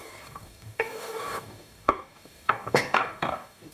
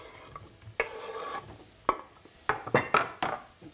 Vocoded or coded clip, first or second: first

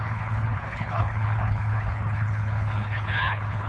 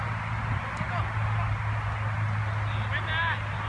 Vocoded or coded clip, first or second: first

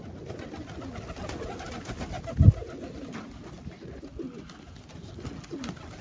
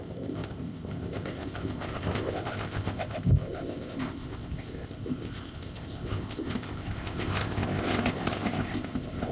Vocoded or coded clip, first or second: second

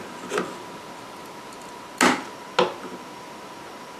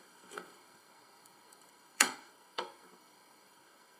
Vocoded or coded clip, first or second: second